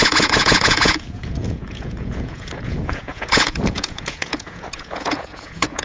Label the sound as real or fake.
fake